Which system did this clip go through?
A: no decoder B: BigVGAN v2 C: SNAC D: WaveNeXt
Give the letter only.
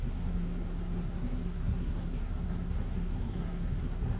C